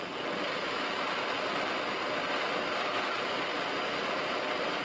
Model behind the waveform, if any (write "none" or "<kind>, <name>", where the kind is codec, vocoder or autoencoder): none